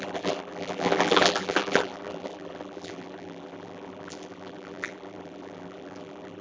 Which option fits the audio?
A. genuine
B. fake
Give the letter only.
B